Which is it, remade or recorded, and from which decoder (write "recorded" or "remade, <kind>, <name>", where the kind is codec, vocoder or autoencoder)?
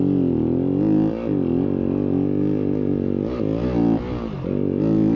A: recorded